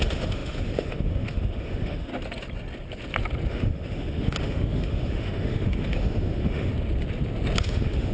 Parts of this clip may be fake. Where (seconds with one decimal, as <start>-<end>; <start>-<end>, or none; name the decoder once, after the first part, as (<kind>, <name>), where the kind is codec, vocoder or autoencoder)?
0.0-2.1 (autoencoder, DAC-VAE); 3.5-6.7; 7.6-8.1